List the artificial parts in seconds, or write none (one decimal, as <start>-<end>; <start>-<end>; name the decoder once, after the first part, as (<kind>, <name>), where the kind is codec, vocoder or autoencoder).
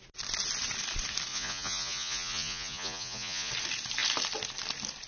1.3-3.5 (vocoder, Vocos)